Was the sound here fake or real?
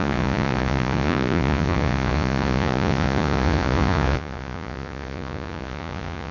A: fake